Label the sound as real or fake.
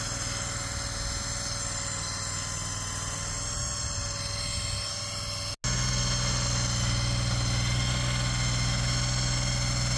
real